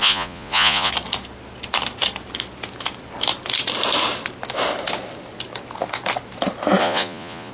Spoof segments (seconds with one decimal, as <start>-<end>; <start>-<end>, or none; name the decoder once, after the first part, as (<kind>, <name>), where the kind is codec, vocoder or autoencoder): 0.0-0.9 (vocoder, Vocos); 6.8-7.5